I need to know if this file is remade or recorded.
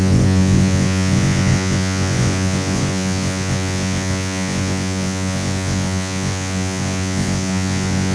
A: remade